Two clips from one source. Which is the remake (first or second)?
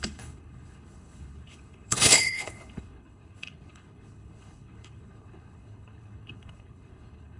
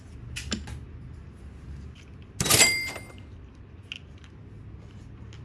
first